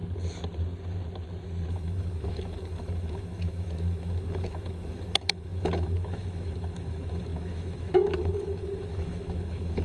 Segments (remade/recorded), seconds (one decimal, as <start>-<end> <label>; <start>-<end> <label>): 0.0-1.7 recorded; 1.7-9.8 remade